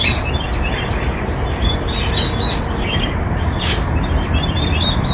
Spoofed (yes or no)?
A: yes